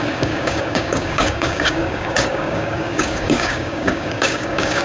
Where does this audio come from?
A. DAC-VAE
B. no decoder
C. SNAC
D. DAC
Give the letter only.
D